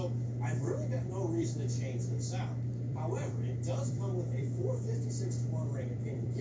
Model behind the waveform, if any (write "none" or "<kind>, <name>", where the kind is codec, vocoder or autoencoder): vocoder, BigVGAN v2